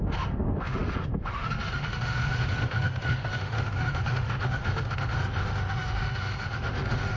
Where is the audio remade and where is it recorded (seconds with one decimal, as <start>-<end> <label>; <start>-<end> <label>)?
0.0-7.2 remade